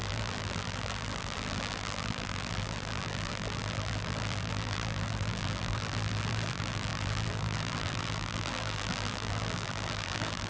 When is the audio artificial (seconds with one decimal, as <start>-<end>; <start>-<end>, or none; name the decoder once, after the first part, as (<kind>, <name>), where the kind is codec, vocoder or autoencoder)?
0.0-10.5 (vocoder, BigVGAN v2)